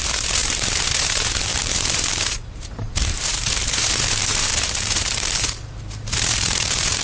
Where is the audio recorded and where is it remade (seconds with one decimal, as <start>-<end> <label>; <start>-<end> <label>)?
0.0-7.0 remade